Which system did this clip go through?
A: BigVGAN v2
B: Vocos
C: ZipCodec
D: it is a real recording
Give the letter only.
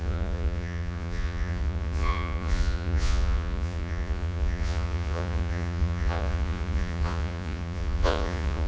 B